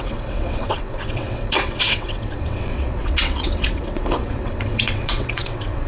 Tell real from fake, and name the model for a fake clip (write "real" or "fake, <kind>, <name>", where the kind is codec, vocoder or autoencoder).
fake, vocoder, WaveNeXt